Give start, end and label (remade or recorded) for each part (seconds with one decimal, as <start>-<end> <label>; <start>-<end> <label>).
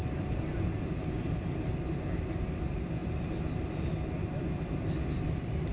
0.0-5.7 recorded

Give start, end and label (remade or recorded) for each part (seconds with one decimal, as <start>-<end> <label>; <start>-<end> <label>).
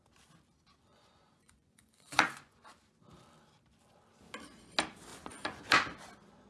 0.0-0.9 recorded; 0.9-2.6 remade; 2.6-5.1 recorded; 5.1-5.6 remade; 5.6-6.5 recorded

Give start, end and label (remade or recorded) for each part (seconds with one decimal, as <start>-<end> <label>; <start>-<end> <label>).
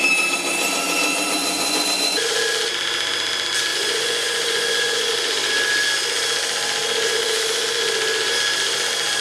0.0-1.4 recorded; 1.4-2.4 remade; 2.4-3.7 recorded; 3.7-5.1 remade; 5.1-9.2 recorded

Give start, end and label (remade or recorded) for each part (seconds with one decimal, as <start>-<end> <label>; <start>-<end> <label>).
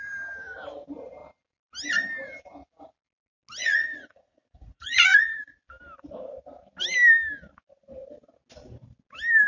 0.0-3.6 recorded; 3.6-5.6 remade; 5.6-9.5 recorded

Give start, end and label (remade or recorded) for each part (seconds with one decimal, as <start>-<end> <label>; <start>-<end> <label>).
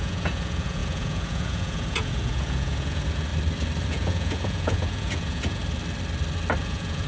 0.0-3.3 remade; 3.3-3.9 recorded; 3.9-5.6 remade; 5.6-6.6 recorded; 6.6-7.1 remade